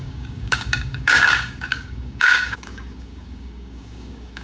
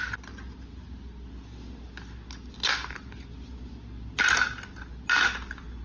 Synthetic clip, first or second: first